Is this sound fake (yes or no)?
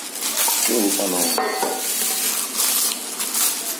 no